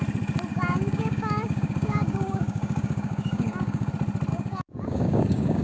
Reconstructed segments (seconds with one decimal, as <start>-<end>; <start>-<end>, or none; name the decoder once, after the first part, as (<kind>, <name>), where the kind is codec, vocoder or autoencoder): 0.5-3.9 (codec, DAC); 4.3-5.6

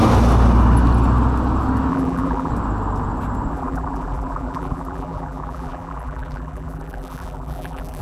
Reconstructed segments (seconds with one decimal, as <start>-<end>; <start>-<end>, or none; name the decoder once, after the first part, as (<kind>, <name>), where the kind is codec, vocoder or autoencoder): 1.9-2.5 (vocoder, BigVGAN v2); 3.5-8.0

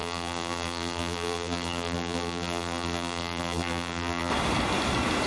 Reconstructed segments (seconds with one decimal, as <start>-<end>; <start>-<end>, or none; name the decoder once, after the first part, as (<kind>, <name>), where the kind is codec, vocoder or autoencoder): 0.0-4.3 (vocoder, BigVGAN v2)

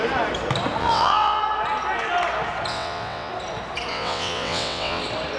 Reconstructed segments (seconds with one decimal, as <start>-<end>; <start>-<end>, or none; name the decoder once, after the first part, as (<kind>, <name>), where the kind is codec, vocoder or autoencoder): 0.8-1.4 (vocoder, WaveNeXt); 2.7-3.3; 3.9-5.0

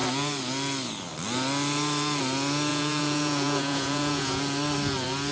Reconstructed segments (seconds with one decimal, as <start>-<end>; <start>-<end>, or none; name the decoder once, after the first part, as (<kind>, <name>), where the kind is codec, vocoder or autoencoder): 2.7-4.4 (vocoder, Vocos)

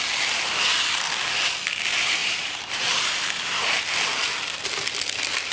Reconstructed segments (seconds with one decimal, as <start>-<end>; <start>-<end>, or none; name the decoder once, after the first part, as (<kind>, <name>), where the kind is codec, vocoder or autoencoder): 2.2-3.8 (vocoder, BigVGAN v2)

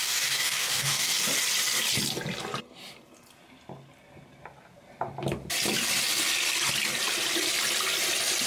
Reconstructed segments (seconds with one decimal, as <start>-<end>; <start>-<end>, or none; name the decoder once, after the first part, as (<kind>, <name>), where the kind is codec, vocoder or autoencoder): 0.0-1.1 (codec, DAC)